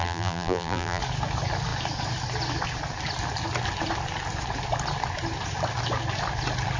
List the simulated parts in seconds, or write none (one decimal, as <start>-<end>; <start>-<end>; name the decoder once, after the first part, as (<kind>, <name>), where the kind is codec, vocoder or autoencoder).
0.0-1.0 (vocoder, BigVGAN v2)